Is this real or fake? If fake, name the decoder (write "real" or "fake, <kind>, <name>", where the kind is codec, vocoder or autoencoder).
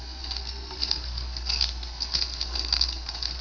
fake, codec, SNAC